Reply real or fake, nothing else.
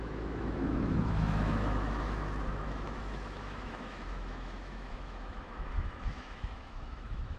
fake